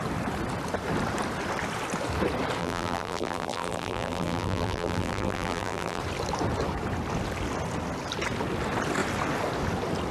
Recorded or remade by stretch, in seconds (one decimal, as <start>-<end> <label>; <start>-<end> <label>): 0.0-2.6 recorded; 2.6-6.0 remade; 6.0-10.1 recorded